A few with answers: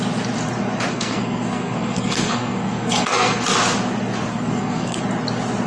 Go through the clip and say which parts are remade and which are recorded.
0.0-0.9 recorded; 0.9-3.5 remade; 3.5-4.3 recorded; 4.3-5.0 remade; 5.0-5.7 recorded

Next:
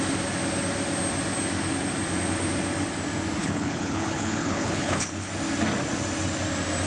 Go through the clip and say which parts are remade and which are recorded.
0.0-3.4 recorded; 3.4-5.3 remade; 5.3-6.9 recorded

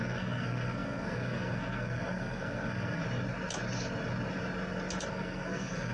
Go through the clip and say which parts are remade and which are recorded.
0.0-3.0 remade; 3.0-5.1 recorded; 5.1-5.9 remade

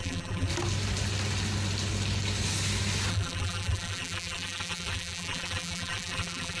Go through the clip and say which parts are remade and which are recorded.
0.0-0.5 remade; 0.5-3.1 recorded; 3.1-6.6 remade

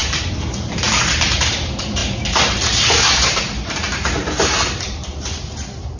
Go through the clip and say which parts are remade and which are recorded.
0.0-0.9 recorded; 0.9-2.0 remade; 2.0-2.5 recorded; 2.5-6.0 remade

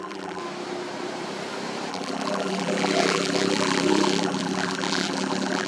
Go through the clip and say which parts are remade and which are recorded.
0.0-0.4 remade; 0.4-1.9 recorded; 1.9-5.7 remade

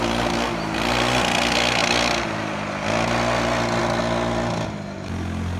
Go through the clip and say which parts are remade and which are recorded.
0.0-5.6 recorded